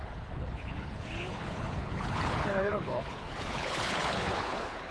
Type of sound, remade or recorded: remade